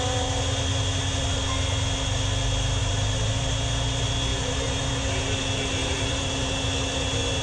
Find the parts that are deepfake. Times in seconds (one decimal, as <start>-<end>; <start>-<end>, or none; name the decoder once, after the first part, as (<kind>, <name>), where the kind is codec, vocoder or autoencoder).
2.8-3.5 (vocoder, BigVGAN v2); 4.3-4.9; 5.8-6.5